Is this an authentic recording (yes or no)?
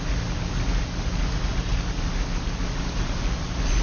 yes